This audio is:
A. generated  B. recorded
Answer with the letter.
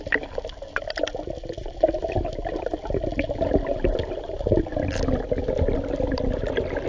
B